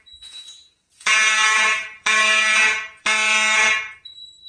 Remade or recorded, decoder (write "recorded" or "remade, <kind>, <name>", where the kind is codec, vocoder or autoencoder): remade, vocoder, Vocos